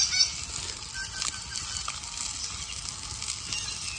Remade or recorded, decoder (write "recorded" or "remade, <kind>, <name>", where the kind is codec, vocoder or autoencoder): recorded